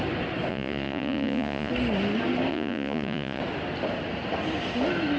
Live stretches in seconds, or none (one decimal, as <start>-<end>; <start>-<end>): 0.0-0.5; 1.7-2.5; 3.4-5.2